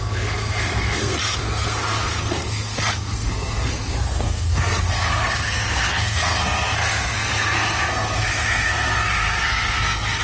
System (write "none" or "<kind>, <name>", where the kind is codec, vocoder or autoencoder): codec, SNAC